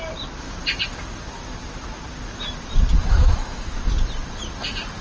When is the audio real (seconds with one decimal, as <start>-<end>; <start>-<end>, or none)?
0.0-2.9; 3.8-5.0